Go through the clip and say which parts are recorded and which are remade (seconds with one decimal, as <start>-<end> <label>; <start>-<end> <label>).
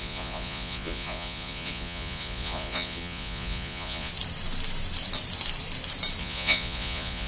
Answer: 0.0-4.1 remade; 4.1-6.2 recorded; 6.2-7.3 remade